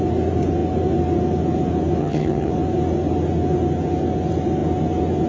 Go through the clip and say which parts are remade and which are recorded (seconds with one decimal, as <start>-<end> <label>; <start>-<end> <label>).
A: 0.0-2.0 recorded; 2.0-2.5 remade; 2.5-5.3 recorded